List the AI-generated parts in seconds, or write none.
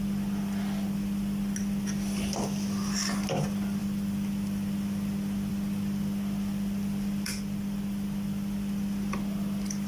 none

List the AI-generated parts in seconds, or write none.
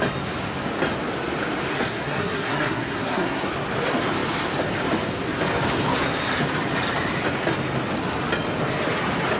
1.7-3.5 (codec, SNAC)